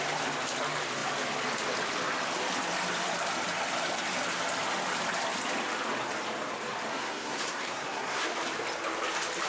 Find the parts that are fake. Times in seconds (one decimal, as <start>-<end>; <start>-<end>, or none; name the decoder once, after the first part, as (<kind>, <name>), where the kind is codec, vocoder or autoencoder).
6.9-8.2 (codec, SNAC)